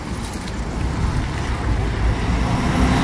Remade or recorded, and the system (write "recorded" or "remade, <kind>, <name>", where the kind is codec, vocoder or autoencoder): recorded